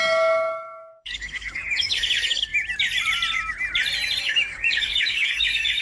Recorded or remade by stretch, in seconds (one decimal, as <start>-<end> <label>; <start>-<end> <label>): 0.0-2.5 remade; 2.5-4.2 recorded; 4.2-5.8 remade